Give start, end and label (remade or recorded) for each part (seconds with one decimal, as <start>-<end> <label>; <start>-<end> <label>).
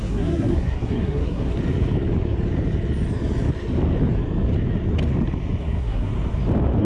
0.0-1.5 remade; 1.5-5.6 recorded; 5.6-6.1 remade; 6.1-6.8 recorded